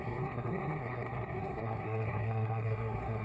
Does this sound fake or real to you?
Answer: fake